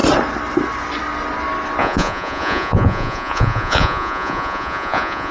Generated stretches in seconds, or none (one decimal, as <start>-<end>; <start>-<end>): 1.8-5.3

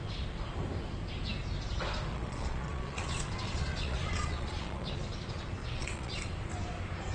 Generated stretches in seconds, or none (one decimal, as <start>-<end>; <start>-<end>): 2.1-4.9; 5.6-6.2

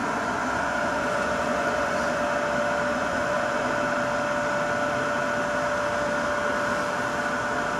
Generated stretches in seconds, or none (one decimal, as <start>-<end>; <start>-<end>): 0.0-2.2; 2.9-3.7

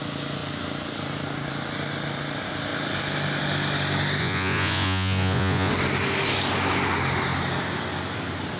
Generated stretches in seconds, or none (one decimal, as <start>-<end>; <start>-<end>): 4.2-5.7